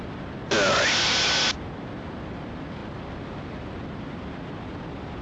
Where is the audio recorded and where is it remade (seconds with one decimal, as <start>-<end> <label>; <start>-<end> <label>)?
0.0-0.4 remade; 0.4-0.9 recorded; 0.9-5.2 remade